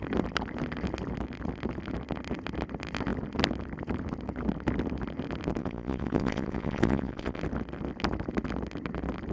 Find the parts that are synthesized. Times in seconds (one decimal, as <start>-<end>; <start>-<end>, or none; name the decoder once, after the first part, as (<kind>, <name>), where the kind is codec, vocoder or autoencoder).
5.6-7.4 (vocoder, WaveNeXt)